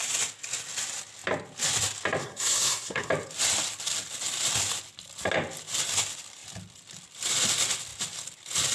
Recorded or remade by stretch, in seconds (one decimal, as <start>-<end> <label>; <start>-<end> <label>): 0.0-2.2 recorded; 2.2-3.1 remade; 3.1-8.7 recorded

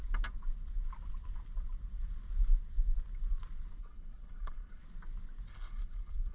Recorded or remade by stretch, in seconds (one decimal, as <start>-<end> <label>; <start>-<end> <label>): 0.0-3.8 recorded; 3.8-4.8 remade; 4.8-5.5 recorded; 5.5-6.3 remade

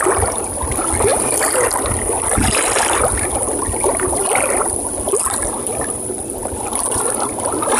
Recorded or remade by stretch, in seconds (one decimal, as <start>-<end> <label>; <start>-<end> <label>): 0.0-6.4 recorded; 6.4-7.0 remade; 7.0-7.8 recorded

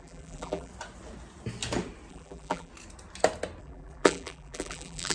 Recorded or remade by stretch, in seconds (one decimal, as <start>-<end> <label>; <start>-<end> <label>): 0.0-0.7 remade; 0.7-2.1 recorded; 2.1-2.7 remade; 2.7-3.6 recorded; 3.6-5.1 remade

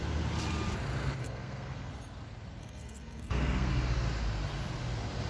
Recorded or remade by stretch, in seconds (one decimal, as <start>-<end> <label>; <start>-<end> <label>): 0.0-1.2 recorded; 1.2-1.9 remade; 1.9-2.6 recorded; 2.6-3.7 remade; 3.7-5.3 recorded

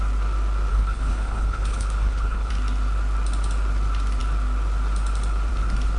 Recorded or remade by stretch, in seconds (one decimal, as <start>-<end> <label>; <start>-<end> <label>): 0.0-0.7 recorded; 0.7-2.5 remade; 2.5-6.0 recorded

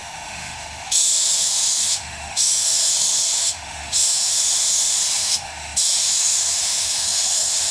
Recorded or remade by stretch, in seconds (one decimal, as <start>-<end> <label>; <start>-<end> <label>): 0.0-7.7 remade